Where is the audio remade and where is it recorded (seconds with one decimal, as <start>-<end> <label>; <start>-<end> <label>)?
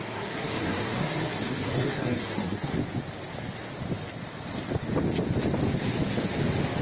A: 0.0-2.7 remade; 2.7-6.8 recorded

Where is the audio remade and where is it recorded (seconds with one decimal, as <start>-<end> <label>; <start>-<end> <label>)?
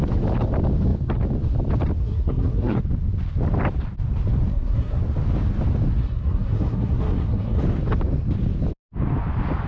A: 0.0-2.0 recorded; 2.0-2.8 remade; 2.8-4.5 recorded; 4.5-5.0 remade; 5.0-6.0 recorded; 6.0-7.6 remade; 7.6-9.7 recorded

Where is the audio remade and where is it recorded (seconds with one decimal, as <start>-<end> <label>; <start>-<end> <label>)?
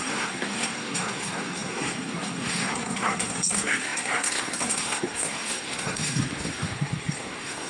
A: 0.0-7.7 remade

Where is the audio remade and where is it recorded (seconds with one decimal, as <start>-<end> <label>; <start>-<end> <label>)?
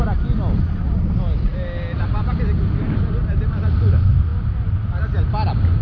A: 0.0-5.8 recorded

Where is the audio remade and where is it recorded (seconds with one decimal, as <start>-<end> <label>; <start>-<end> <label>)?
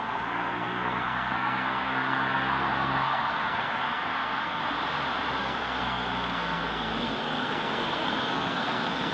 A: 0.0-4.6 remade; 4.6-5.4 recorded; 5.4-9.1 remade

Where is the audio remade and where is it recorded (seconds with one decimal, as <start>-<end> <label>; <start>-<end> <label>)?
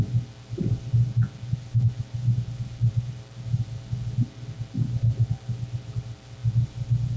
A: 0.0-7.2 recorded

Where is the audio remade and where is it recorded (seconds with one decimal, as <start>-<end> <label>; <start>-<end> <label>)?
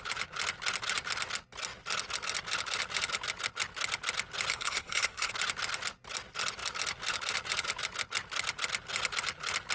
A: 0.0-4.5 recorded; 4.5-5.3 remade; 5.3-9.7 recorded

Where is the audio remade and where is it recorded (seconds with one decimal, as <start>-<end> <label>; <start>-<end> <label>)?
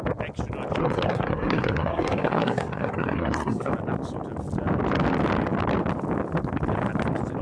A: 0.0-0.8 recorded; 0.8-3.7 remade; 3.7-7.4 recorded